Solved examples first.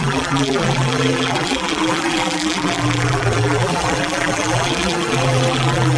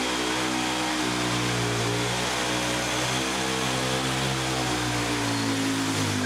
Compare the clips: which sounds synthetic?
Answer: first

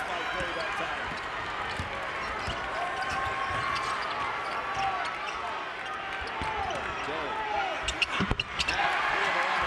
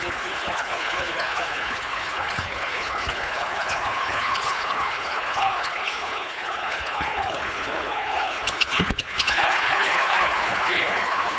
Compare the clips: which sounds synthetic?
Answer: second